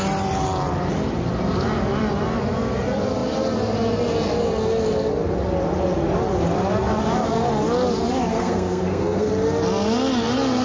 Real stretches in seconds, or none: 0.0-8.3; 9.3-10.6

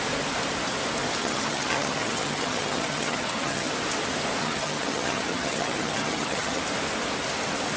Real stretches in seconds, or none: 0.0-1.2; 3.7-4.4; 6.6-7.8

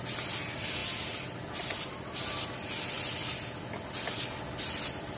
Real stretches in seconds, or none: 0.0-5.2

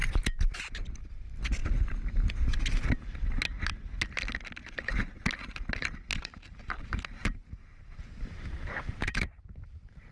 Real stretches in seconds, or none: 0.0-1.1; 1.6-6.2

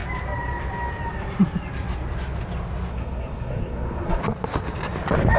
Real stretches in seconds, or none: 0.0-2.9; 4.2-5.4

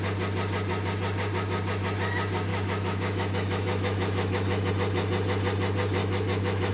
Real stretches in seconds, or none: 0.0-2.5; 4.7-6.0

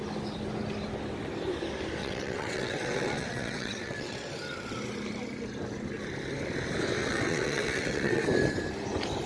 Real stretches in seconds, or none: 0.0-2.0; 4.3-7.0; 8.2-9.3

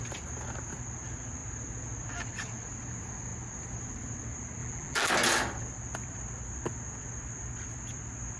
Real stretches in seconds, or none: 0.0-4.6; 5.1-8.4